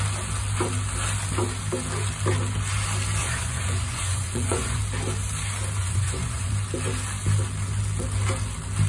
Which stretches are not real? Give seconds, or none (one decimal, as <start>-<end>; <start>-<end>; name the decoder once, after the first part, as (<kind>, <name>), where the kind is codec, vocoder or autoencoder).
3.2-4.8 (vocoder, Vocos); 5.8-6.5